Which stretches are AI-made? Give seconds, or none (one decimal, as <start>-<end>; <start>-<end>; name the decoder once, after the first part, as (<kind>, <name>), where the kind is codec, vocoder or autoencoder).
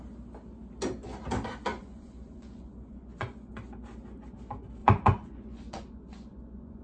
1.7-3.5 (vocoder, Vocos); 4.8-6.8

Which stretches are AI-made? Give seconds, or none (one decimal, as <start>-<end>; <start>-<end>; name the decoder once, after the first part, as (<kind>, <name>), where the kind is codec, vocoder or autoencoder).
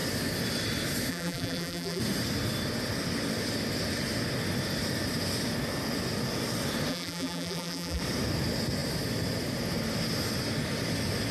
1.1-2.0 (vocoder, BigVGAN v2); 6.9-8.0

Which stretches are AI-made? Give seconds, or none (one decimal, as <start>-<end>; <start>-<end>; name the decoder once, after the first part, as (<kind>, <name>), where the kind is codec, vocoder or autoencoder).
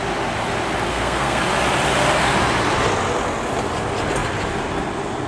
0.9-1.4 (codec, SNAC)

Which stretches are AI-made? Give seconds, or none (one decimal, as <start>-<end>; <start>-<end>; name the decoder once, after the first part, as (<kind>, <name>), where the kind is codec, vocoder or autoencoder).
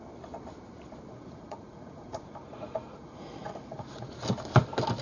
1.1-4.1 (vocoder, Vocos)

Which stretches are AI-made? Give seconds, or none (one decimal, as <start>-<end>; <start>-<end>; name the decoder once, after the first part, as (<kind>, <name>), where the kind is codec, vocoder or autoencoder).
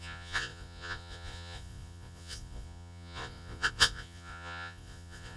0.0-5.4 (vocoder, Vocos)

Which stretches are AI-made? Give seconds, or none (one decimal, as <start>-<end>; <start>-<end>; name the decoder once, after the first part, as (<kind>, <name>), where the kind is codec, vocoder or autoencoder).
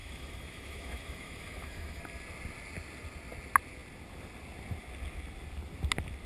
0.0-2.0 (autoencoder, DAC-VAE)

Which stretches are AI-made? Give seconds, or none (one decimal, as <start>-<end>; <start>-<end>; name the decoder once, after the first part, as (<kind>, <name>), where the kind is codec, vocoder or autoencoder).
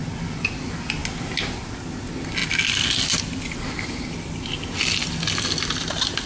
none